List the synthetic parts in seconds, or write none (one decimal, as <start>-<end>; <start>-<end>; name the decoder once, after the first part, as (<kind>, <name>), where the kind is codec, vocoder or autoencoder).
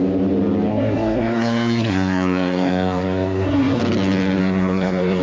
0.7-3.8 (codec, SNAC); 4.4-5.2